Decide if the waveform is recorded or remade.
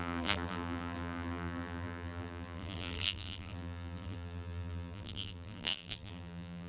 remade